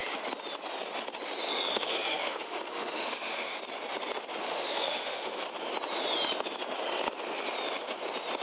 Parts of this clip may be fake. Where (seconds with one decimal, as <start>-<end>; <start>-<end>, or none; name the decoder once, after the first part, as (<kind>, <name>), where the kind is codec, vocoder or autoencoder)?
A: 1.7-3.6 (autoencoder, DAC-VAE); 4.4-5.4